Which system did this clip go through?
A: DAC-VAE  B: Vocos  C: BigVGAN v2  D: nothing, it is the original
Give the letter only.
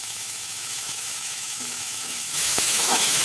A